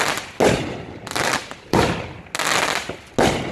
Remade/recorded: recorded